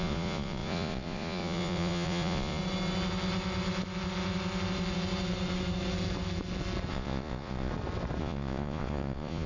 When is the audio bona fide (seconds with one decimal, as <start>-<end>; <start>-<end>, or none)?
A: 2.6-6.9; 7.7-8.2